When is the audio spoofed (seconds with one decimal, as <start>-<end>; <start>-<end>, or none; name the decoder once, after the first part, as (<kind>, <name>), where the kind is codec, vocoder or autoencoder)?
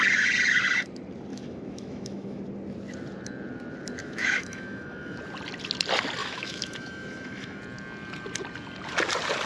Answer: 1.3-2.4 (autoencoder, DAC-VAE); 4.0-5.2; 6.2-7.6